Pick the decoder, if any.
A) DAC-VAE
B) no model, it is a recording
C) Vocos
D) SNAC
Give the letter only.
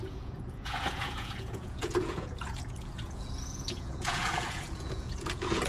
C